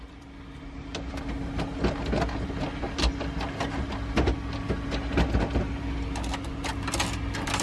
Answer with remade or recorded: recorded